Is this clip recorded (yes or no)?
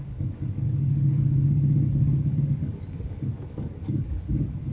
no